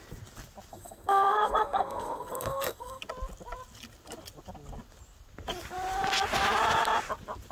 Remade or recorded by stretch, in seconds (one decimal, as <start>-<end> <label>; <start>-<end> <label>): 0.0-0.7 recorded; 0.7-3.0 remade; 3.0-7.5 recorded